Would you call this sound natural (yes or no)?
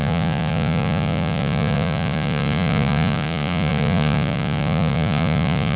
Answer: no